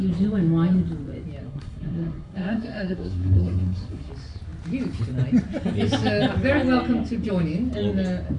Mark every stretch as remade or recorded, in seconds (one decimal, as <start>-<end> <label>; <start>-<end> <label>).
0.0-1.4 recorded; 1.4-4.1 remade; 4.1-8.4 recorded